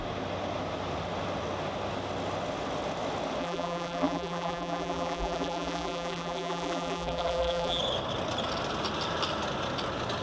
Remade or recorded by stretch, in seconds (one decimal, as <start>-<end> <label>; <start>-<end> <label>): 0.0-3.4 recorded; 3.4-7.8 remade; 7.8-10.2 recorded